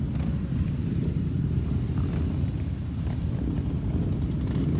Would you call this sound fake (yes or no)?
no